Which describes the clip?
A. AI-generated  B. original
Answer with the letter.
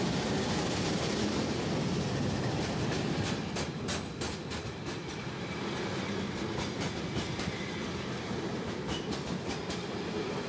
B